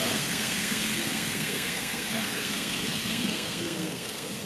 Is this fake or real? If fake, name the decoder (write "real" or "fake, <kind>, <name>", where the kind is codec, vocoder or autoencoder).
fake, codec, SNAC